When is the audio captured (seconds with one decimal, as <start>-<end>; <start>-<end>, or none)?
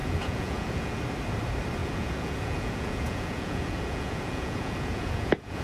1.0-1.8